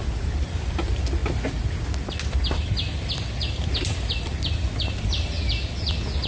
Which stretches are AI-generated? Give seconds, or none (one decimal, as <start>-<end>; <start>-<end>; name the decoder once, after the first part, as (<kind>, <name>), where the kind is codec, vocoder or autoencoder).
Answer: none